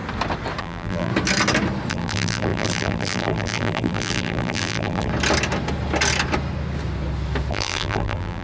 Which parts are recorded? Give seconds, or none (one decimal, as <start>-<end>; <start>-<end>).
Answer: 0.0-0.6; 1.1-1.9; 5.1-7.5